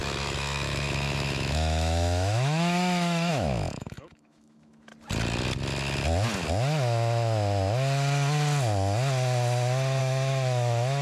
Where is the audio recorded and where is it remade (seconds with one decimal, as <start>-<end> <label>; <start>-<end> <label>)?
0.0-4.9 remade; 4.9-10.0 recorded; 10.0-11.0 remade